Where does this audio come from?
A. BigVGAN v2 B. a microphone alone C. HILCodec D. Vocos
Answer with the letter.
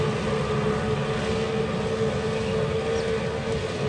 B